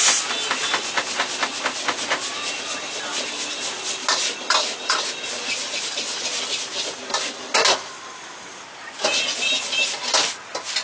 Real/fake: real